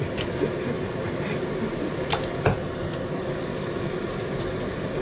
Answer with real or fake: real